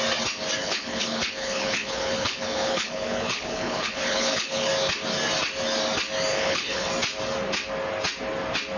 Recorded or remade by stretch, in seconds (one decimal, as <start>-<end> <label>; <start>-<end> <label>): 0.0-0.6 recorded; 0.6-4.7 remade; 4.7-6.3 recorded; 6.3-6.9 remade; 6.9-8.8 recorded